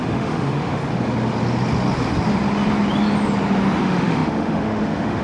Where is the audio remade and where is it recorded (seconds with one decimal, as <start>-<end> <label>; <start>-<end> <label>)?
0.0-0.8 remade; 0.8-3.8 recorded; 3.8-5.2 remade